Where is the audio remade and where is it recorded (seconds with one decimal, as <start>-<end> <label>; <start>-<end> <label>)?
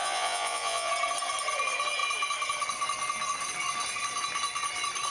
0.0-0.9 remade; 0.9-5.1 recorded